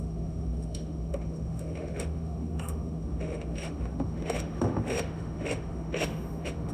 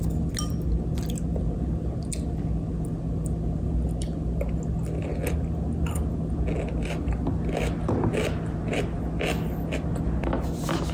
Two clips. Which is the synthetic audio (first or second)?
first